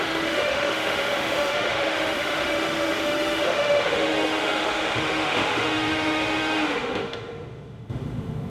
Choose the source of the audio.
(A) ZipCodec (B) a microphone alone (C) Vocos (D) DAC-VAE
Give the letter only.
D